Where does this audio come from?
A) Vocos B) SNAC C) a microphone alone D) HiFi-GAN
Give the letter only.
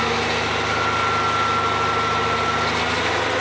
C